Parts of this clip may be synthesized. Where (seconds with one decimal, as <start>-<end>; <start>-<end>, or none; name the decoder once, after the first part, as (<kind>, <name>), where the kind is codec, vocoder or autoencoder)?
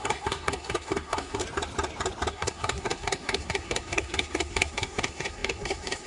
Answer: 0.0-1.4 (codec, SNAC); 2.3-6.1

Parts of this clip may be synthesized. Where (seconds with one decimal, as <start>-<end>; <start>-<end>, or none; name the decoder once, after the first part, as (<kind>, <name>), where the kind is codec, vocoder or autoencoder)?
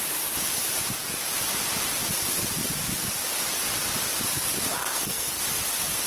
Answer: 4.8-5.4 (codec, SNAC)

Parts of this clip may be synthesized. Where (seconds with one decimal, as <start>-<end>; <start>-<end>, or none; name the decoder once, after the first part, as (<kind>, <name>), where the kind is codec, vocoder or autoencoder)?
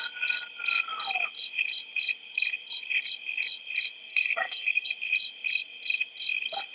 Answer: 4.1-4.9 (codec, SNAC)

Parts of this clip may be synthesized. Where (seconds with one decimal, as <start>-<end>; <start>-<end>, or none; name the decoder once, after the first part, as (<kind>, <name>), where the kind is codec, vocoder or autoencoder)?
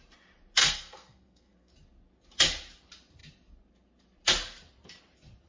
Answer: 0.6-1.7 (codec, SNAC)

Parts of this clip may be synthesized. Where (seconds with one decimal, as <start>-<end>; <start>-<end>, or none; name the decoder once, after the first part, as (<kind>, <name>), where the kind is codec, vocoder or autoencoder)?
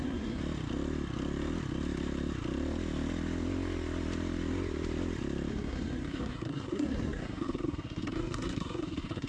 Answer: 0.0-0.4 (codec, SNAC); 5.5-9.3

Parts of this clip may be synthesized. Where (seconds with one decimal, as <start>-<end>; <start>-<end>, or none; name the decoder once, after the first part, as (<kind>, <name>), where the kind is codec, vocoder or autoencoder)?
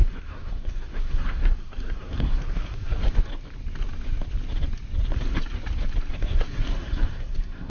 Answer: 0.0-3.3 (codec, SNAC); 6.1-7.7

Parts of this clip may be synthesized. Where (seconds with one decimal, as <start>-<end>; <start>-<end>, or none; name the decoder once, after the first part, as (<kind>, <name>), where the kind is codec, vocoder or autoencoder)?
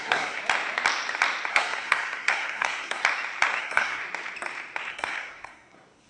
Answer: 0.0-0.4 (codec, SNAC); 1.5-3.0; 3.6-4.0; 4.9-6.1